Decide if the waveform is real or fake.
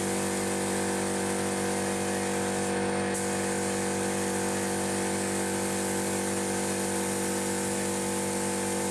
real